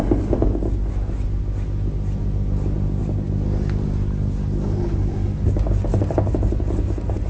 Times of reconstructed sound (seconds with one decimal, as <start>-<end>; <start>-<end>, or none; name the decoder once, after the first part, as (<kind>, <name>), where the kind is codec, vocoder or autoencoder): none